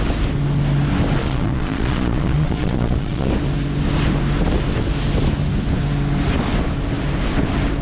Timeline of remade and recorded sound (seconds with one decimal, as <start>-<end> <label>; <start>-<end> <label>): 0.0-1.2 recorded; 1.2-3.3 remade; 3.3-7.8 recorded